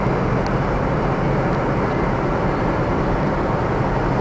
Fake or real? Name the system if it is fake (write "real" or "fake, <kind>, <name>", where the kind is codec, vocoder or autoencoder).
real